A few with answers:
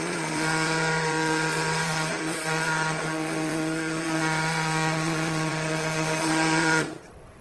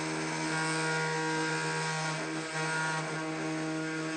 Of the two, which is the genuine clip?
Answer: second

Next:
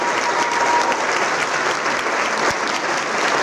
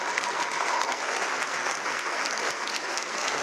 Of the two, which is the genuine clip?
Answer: first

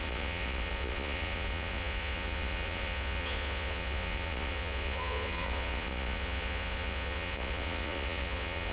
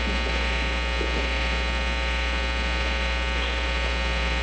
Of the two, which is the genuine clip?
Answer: second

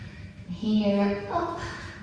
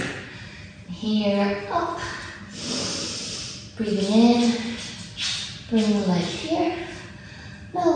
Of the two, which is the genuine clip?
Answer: second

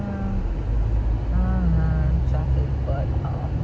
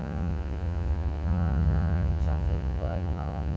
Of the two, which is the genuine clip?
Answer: first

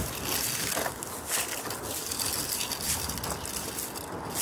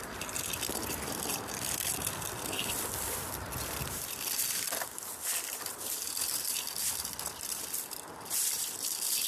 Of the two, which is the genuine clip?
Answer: first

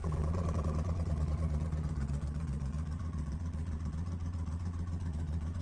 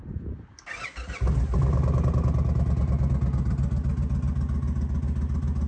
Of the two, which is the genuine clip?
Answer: second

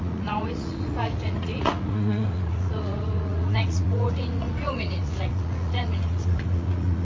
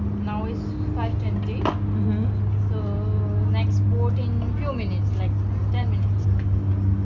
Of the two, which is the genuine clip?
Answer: second